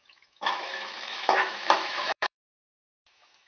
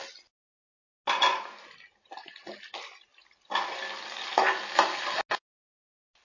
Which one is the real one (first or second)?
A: second